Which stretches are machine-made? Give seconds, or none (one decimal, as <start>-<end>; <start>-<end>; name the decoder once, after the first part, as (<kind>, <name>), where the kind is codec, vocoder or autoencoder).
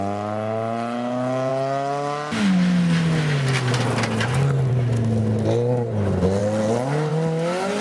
none